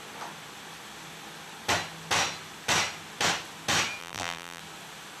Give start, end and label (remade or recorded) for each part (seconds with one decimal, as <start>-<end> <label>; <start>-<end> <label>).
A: 0.0-4.0 recorded; 4.0-4.6 remade; 4.6-5.2 recorded